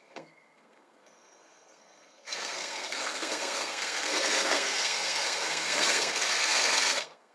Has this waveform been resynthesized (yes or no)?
yes